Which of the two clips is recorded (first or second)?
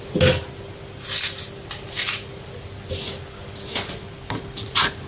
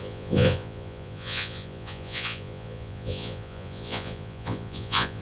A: first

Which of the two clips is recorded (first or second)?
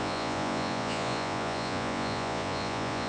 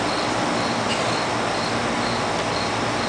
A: second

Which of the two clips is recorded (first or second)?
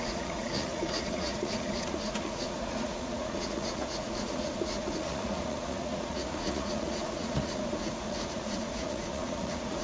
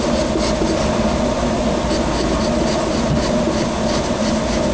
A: second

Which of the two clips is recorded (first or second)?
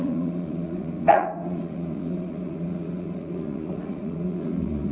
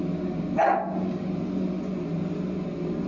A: second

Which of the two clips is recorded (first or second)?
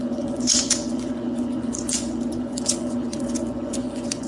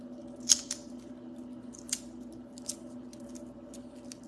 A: second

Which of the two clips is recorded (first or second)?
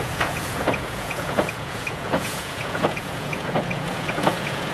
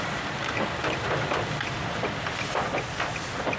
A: second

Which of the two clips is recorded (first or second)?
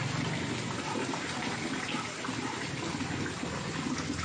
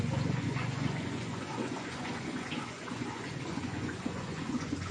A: first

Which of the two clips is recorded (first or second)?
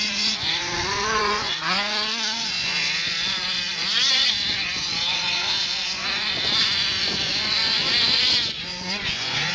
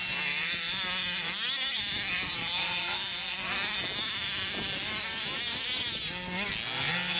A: second